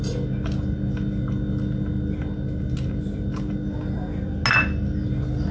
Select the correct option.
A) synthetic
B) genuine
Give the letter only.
B